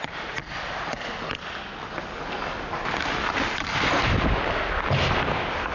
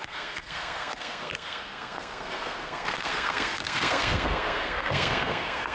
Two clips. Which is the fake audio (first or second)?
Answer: second